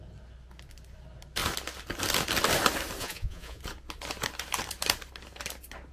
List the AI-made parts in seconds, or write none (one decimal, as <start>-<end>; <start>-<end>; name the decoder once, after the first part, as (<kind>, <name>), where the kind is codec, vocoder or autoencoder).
3.0-3.6 (vocoder, Vocos)